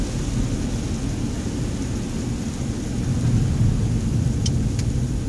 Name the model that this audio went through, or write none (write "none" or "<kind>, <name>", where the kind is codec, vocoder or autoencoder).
none